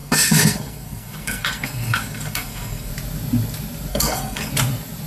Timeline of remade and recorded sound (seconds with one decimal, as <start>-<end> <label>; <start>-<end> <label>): 0.0-2.9 remade; 2.9-3.9 recorded; 3.9-4.5 remade; 4.5-5.1 recorded